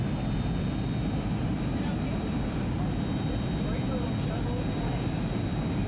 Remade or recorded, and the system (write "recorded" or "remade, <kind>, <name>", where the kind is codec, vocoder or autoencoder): recorded